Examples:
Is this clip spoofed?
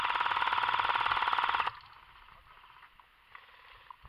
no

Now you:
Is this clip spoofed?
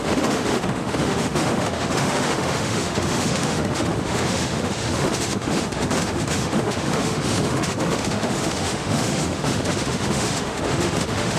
yes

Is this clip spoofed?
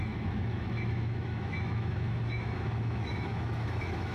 yes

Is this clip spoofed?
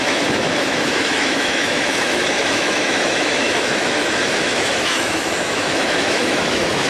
yes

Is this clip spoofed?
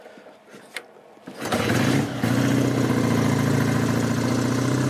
no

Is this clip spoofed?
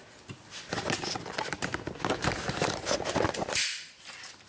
no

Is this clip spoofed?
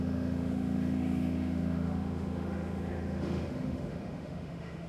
yes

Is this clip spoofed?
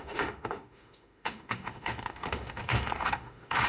yes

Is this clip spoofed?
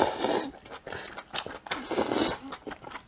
no